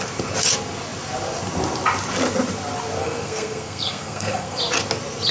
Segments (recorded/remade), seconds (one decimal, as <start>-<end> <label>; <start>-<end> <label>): 0.0-3.0 recorded; 3.0-4.6 remade; 4.6-5.3 recorded